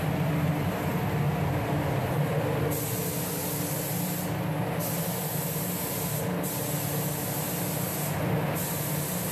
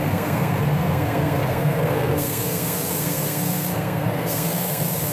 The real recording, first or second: first